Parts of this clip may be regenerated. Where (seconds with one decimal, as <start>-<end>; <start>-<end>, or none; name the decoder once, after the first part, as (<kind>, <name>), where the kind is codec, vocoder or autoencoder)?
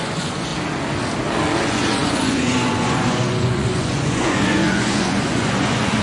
0.0-0.5 (vocoder, Vocos); 1.6-6.0